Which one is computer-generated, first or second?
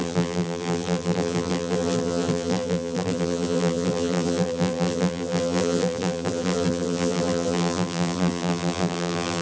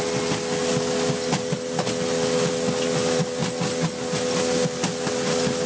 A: first